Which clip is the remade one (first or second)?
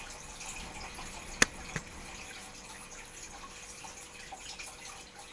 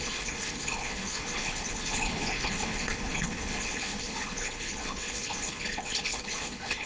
second